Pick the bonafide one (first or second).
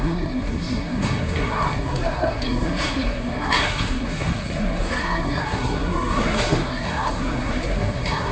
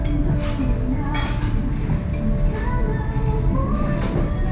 second